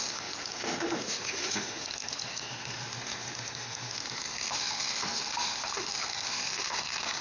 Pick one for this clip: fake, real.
fake